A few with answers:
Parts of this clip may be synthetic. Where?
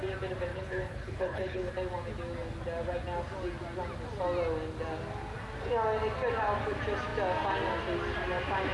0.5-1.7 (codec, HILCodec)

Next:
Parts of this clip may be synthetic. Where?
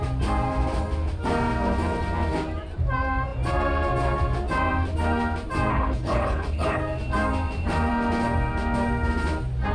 5.7-6.8 (codec, HILCodec)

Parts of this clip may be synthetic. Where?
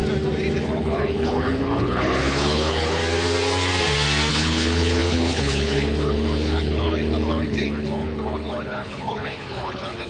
0.6-3.0 (codec, HILCodec); 4.3-10.1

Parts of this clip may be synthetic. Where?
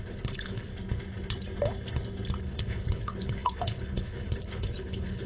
0.0-0.7 (codec, HILCodec); 2.4-5.3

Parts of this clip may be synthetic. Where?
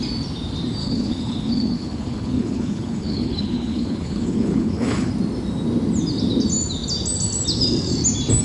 0.8-5.1 (codec, HILCodec)